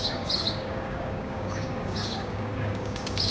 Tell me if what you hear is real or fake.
fake